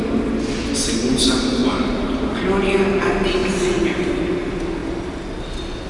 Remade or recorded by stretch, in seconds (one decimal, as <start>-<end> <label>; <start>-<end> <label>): 0.0-5.9 recorded